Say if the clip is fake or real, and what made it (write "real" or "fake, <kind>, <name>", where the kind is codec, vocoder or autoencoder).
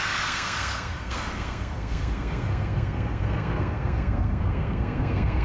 fake, codec, SNAC